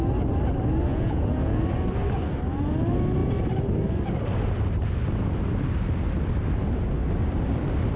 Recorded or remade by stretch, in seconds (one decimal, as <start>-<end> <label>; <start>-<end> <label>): 0.0-0.9 recorded; 0.9-1.6 remade; 1.6-8.0 recorded